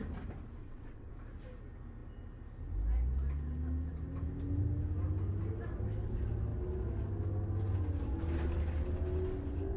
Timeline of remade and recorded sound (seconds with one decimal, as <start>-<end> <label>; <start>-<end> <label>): 0.0-0.6 recorded; 0.6-1.1 remade; 1.1-9.8 recorded